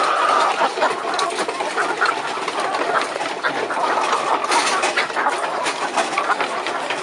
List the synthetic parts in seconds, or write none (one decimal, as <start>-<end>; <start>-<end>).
none